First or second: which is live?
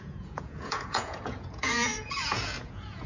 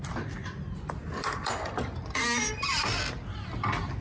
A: second